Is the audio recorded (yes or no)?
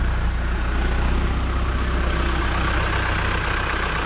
yes